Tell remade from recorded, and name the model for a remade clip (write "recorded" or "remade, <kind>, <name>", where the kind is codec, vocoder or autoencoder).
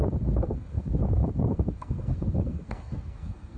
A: remade, codec, SNAC